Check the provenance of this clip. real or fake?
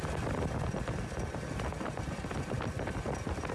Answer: fake